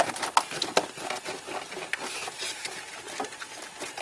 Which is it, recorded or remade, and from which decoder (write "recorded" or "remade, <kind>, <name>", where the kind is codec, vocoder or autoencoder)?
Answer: recorded